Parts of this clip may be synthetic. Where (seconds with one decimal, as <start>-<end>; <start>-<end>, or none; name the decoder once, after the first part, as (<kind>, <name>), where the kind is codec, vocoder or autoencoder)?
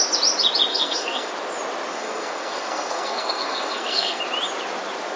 0.7-1.3 (codec, SNAC); 1.9-4.2